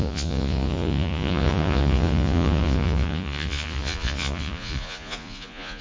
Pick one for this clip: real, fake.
fake